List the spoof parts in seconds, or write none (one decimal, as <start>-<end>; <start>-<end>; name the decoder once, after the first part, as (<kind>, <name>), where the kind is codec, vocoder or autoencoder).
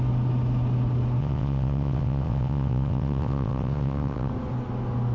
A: 1.2-4.3 (vocoder, WaveNeXt)